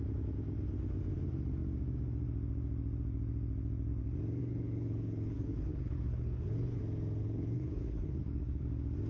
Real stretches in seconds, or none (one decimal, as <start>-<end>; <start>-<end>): 0.0-4.4; 6.8-7.2; 8.6-9.1